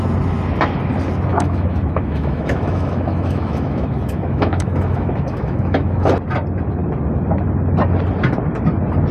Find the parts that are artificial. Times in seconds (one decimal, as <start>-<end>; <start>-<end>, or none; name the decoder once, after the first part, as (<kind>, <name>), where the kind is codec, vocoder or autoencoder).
1.3-6.1 (autoencoder, DAC-VAE)